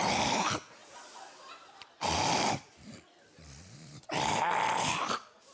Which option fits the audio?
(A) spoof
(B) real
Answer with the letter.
B